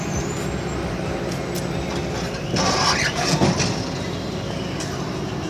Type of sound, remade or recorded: recorded